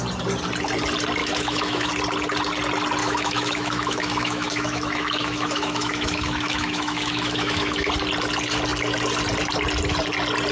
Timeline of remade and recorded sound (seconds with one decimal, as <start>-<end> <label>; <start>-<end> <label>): 0.0-1.2 recorded; 1.2-1.9 remade; 1.9-3.0 recorded; 3.0-7.9 remade; 7.9-10.5 recorded